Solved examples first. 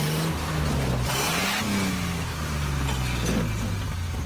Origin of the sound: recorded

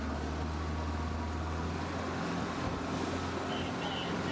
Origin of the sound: recorded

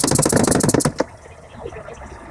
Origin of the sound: recorded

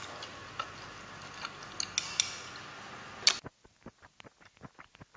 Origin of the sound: recorded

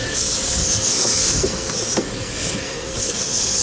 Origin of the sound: remade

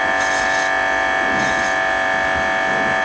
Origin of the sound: recorded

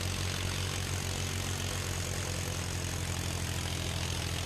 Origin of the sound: recorded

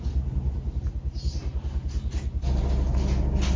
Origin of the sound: recorded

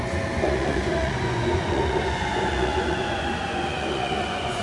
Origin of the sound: remade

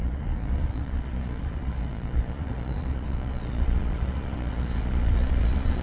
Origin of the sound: remade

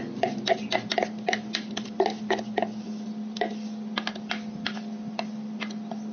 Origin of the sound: recorded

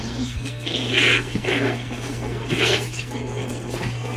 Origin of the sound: remade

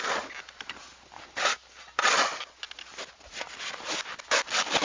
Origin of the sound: recorded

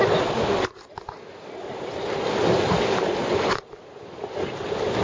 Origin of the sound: recorded